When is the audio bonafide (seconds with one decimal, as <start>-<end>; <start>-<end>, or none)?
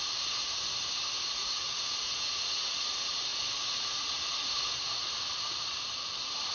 0.0-1.4; 2.8-3.3; 4.3-6.5